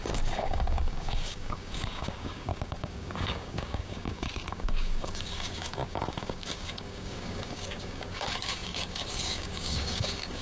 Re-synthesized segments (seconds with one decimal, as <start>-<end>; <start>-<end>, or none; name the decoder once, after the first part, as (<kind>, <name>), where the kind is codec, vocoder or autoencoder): 0.0-10.4 (codec, DAC)